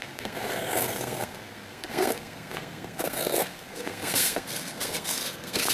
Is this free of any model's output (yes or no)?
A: no